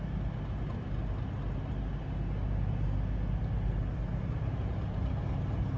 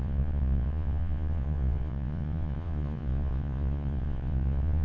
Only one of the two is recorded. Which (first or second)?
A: first